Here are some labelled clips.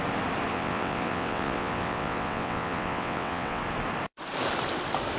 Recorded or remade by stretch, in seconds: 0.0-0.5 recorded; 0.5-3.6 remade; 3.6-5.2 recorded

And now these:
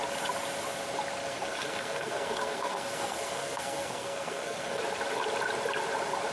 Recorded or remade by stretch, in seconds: 0.0-1.2 recorded; 1.2-4.8 remade; 4.8-6.3 recorded

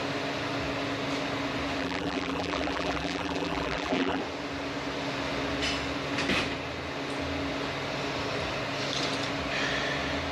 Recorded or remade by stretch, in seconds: 0.0-1.8 recorded; 1.8-4.2 remade; 4.2-10.3 recorded

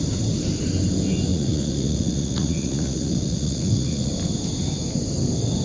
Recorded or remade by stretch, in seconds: 0.0-1.3 recorded; 1.3-4.1 remade; 4.1-5.6 recorded

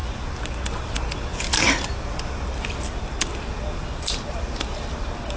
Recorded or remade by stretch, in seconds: 0.0-5.4 recorded

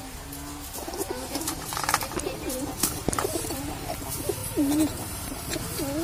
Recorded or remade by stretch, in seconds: 0.0-1.0 recorded; 1.0-3.6 remade; 3.6-4.4 recorded; 4.4-5.5 remade; 5.5-6.0 recorded